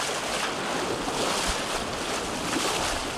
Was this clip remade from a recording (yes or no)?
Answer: no